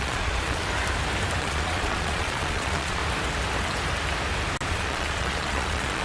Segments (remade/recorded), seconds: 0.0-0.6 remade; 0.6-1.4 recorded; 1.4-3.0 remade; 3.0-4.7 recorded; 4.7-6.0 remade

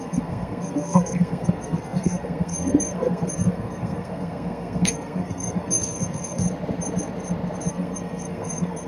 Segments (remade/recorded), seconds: 0.0-6.4 remade; 6.4-7.7 recorded; 7.7-8.9 remade

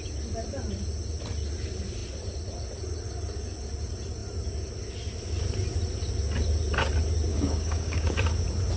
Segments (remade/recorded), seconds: 0.0-7.3 recorded; 7.3-8.1 remade; 8.1-8.8 recorded

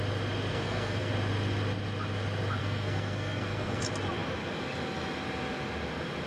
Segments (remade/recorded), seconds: 0.0-0.5 recorded; 0.5-1.1 remade; 1.1-2.6 recorded; 2.6-3.8 remade; 3.8-6.3 recorded